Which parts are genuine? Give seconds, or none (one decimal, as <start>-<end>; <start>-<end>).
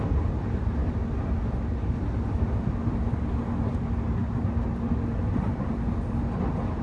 0.0-6.8